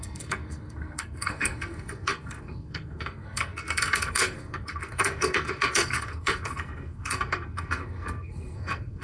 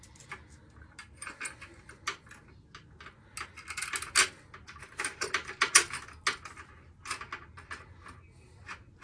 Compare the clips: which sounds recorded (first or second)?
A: second